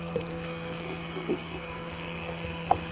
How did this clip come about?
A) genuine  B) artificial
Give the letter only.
B